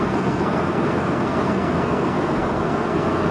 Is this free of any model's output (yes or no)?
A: no